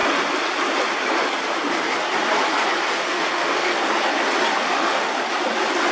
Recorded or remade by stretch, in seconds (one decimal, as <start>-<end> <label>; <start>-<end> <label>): 0.0-3.0 recorded; 3.0-3.7 remade; 3.7-4.6 recorded; 4.6-5.1 remade; 5.1-5.9 recorded